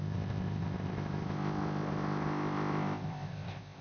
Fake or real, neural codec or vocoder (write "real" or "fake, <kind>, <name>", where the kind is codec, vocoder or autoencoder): fake, codec, ZipCodec